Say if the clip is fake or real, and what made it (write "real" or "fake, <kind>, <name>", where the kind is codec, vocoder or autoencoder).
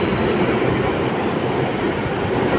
real